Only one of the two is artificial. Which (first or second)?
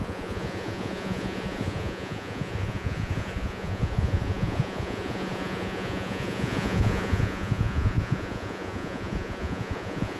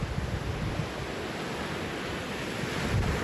first